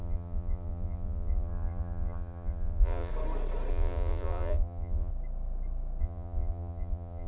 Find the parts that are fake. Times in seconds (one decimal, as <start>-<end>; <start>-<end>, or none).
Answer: 0.0-3.1; 3.7-5.1; 6.0-7.3